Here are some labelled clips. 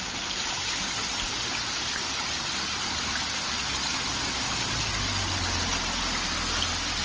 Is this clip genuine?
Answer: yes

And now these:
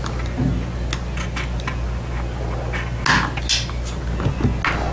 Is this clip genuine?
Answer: yes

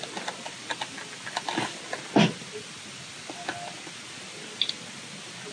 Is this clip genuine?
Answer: yes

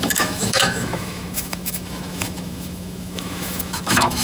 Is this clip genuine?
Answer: no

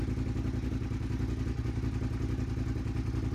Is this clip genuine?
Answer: yes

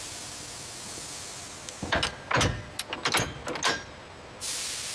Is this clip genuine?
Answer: yes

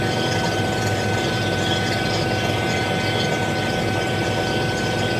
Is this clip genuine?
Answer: yes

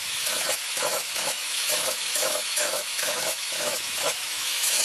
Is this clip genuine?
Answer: no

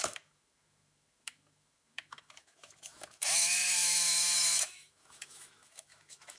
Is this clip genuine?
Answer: no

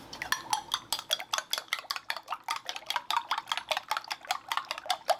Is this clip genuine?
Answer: yes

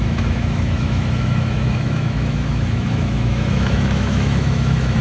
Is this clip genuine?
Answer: no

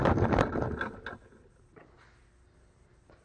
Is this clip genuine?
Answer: yes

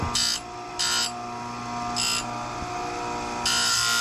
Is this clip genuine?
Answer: yes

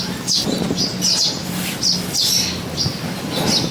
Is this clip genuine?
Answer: yes